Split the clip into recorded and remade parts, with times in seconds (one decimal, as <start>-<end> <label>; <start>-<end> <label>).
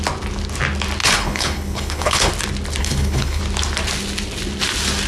0.0-1.0 recorded; 1.0-2.3 remade; 2.3-2.8 recorded; 2.8-3.4 remade; 3.4-5.1 recorded